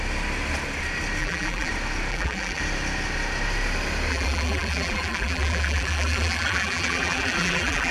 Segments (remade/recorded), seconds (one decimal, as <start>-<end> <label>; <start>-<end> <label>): 0.0-1.2 recorded; 1.2-1.7 remade; 1.7-2.1 recorded; 2.1-2.6 remade; 2.6-4.1 recorded; 4.1-7.9 remade

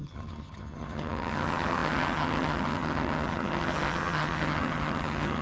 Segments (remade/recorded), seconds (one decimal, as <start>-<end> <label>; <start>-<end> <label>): 0.0-5.4 remade